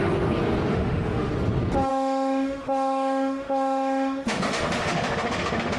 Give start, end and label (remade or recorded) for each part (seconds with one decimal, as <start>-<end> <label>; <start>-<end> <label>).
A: 0.0-0.7 recorded; 0.7-1.3 remade; 1.3-1.9 recorded; 1.9-5.8 remade